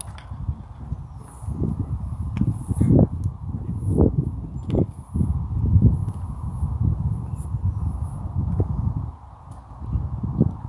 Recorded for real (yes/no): yes